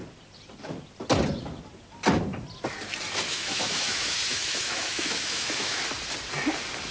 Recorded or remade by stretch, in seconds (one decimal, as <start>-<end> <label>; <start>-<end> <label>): 0.0-3.3 recorded; 3.3-5.8 remade; 5.8-6.9 recorded